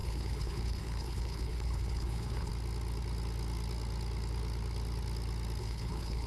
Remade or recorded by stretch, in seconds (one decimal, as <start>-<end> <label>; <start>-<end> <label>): 0.0-2.5 remade; 2.5-5.6 recorded; 5.6-6.3 remade